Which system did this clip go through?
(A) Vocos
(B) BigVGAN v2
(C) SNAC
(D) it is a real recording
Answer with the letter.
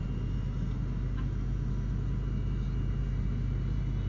D